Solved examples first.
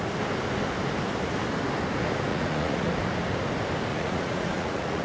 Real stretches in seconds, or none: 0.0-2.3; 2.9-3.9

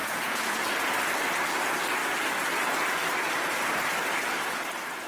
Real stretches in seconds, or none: 0.6-5.1

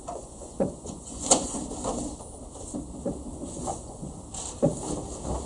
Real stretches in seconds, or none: 1.6-3.3; 4.1-5.5

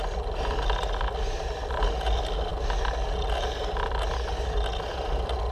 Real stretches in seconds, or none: 0.0-5.5

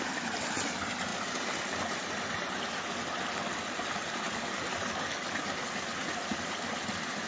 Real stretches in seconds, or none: 0.0-7.3

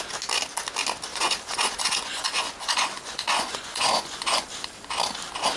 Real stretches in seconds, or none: 0.0-1.1; 4.5-5.6

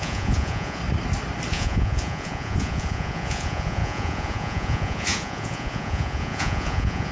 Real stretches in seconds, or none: 0.8-1.5

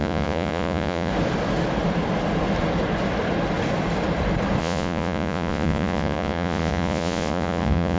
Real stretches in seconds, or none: 1.1-4.6